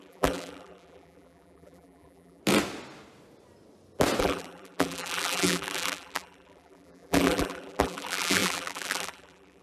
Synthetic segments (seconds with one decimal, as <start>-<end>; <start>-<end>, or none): 0.0-2.4; 4.2-9.6